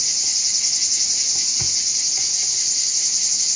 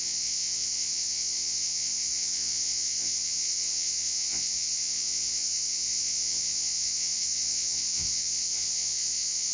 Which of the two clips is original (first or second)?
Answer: first